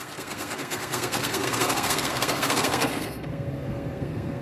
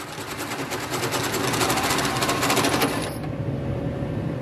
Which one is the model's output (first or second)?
first